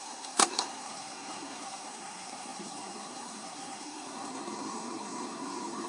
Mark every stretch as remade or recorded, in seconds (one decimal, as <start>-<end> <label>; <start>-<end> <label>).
0.0-5.9 remade